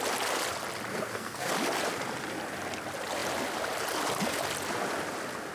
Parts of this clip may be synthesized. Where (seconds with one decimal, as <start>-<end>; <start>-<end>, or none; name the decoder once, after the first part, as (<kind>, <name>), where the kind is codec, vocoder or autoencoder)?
0.9-1.5 (codec, SNAC)